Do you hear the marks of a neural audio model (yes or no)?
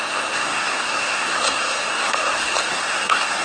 yes